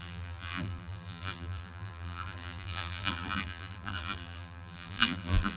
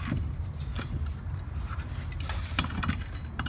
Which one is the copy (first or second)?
first